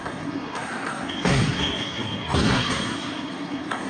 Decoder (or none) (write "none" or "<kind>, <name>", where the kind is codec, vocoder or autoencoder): codec, SNAC